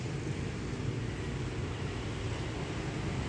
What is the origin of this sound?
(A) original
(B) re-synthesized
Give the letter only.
A